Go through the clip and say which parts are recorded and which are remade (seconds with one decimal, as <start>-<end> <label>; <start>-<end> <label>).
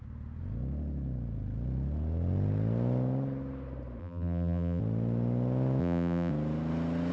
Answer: 0.0-4.0 recorded; 4.0-4.8 remade; 4.8-5.8 recorded; 5.8-6.3 remade; 6.3-7.1 recorded